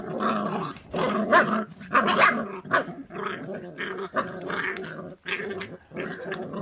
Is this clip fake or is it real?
real